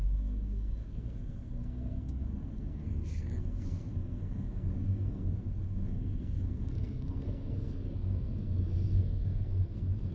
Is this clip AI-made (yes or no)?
yes